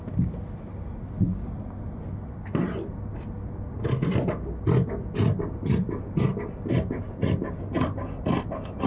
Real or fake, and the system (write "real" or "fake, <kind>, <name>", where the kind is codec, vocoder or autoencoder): real